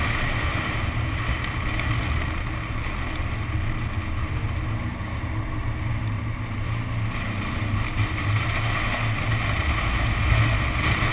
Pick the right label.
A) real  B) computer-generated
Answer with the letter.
A